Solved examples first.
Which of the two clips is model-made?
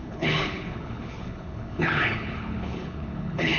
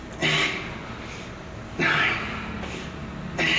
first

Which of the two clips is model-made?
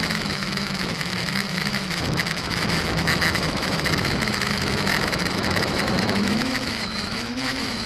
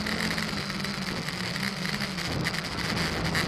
first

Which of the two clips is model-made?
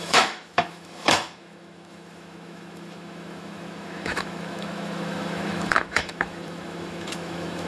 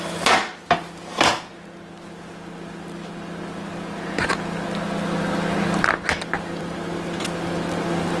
first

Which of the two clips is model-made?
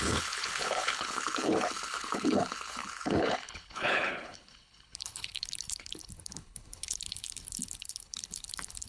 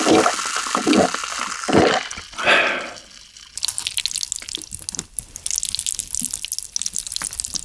first